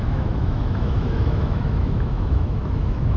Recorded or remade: remade